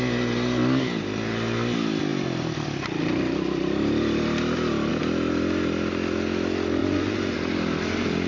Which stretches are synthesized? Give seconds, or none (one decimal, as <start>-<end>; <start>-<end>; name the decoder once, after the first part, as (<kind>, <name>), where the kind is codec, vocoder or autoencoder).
6.8-7.4 (vocoder, Vocos)